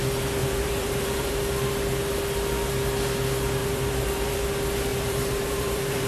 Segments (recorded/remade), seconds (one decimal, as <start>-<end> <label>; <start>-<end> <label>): 0.0-0.4 recorded; 0.4-1.4 remade; 1.4-3.6 recorded; 3.6-4.4 remade; 4.4-4.9 recorded; 4.9-6.1 remade